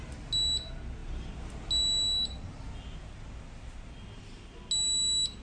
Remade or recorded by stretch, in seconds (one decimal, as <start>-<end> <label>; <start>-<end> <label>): 0.0-5.4 recorded